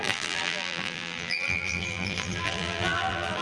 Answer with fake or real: fake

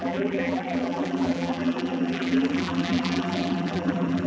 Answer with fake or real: fake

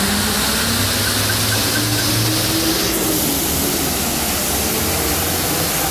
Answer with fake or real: real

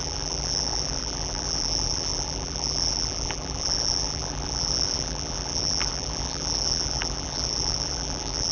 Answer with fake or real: fake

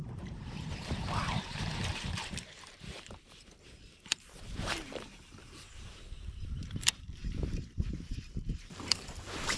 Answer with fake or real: fake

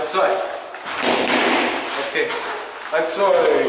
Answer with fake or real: real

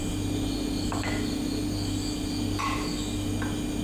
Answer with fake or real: real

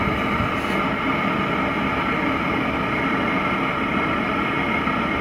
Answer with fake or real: real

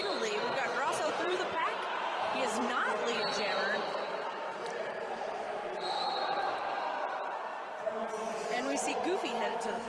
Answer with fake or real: fake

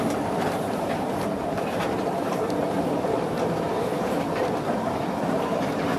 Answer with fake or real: fake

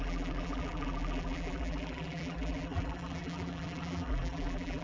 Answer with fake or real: fake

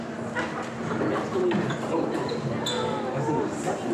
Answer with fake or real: real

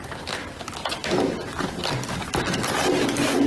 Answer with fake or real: fake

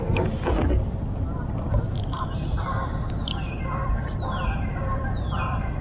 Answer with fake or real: fake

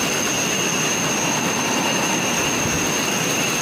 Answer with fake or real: real